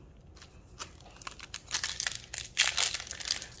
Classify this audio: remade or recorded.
recorded